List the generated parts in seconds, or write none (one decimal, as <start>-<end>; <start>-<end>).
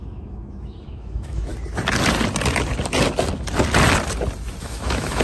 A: 0.0-1.5; 4.6-5.2